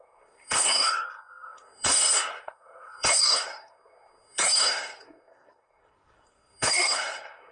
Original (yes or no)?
no